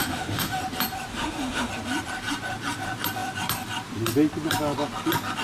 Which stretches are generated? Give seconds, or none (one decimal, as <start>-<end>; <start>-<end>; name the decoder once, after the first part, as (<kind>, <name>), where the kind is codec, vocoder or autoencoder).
0.0-0.6 (autoencoder, DAC-VAE); 1.1-1.7